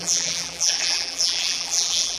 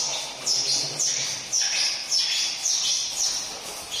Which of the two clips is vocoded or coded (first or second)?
first